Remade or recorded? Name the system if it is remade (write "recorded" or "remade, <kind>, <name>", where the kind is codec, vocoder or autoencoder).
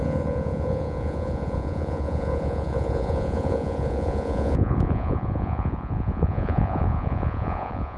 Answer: remade, vocoder, Vocos